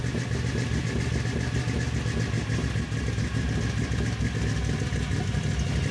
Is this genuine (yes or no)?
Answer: yes